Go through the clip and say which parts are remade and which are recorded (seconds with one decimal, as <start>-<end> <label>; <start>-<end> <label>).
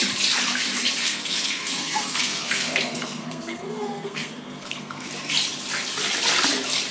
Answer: 0.0-1.0 recorded; 1.0-5.1 remade; 5.1-6.9 recorded